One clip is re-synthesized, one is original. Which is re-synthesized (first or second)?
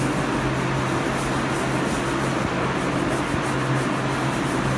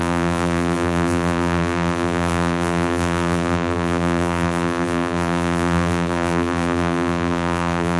second